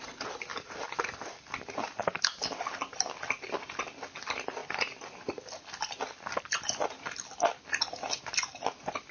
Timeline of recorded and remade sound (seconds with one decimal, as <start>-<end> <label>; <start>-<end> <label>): 0.0-9.1 recorded